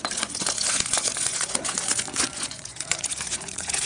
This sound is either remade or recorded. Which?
remade